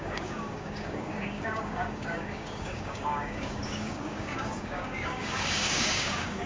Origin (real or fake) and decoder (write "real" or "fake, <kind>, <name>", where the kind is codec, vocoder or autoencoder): fake, codec, DAC